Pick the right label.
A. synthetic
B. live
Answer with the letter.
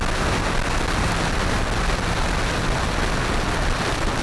B